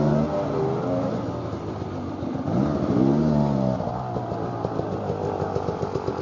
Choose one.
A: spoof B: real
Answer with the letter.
B